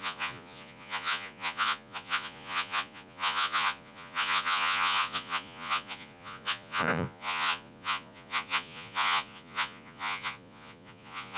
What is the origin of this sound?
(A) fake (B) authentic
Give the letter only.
A